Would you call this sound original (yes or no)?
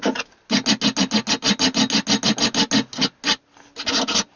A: yes